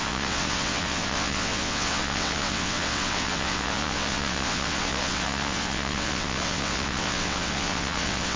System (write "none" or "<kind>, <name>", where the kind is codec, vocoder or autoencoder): vocoder, WaveNeXt